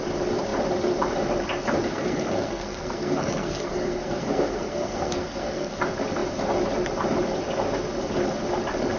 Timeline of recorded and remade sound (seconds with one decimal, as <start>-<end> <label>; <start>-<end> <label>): 0.0-1.9 recorded; 1.9-5.8 remade; 5.8-9.0 recorded